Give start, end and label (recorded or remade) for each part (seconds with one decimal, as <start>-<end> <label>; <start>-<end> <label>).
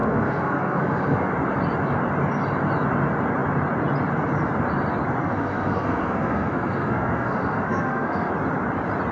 0.0-1.3 remade; 1.3-5.2 recorded; 5.2-8.3 remade; 8.3-9.1 recorded